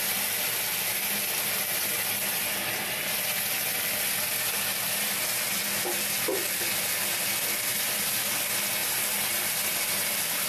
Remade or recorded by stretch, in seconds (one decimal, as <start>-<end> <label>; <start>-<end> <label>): 0.0-7.7 recorded; 7.7-8.3 remade; 8.3-8.8 recorded; 8.8-10.1 remade; 10.1-10.5 recorded